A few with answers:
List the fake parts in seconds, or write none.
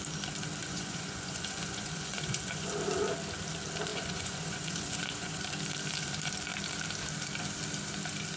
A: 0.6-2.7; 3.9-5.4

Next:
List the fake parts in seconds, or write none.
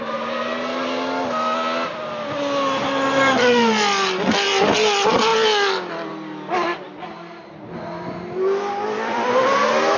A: none